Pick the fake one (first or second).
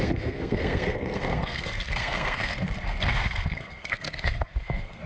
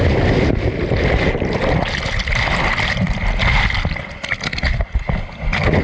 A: first